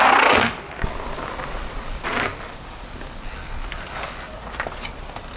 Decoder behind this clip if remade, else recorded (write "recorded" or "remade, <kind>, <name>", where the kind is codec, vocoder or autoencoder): recorded